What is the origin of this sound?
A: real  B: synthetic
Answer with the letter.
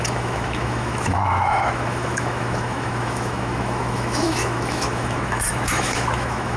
B